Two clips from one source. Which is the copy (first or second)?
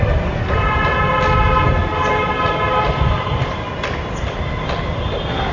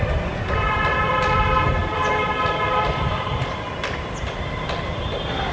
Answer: second